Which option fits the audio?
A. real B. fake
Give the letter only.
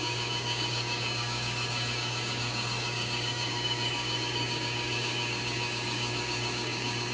B